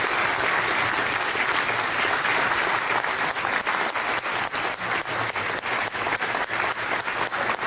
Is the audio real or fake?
real